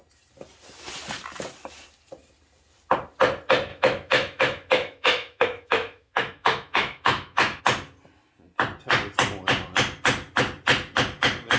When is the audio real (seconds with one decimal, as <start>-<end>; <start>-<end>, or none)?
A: 0.0-3.7; 7.6-11.6